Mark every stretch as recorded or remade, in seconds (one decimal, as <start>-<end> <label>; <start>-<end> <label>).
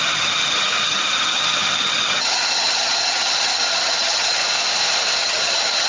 0.0-4.4 remade; 4.4-5.2 recorded; 5.2-5.9 remade